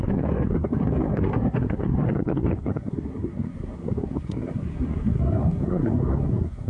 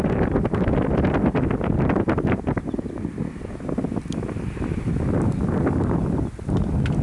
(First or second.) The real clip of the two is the second